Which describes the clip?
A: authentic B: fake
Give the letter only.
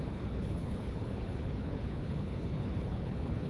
B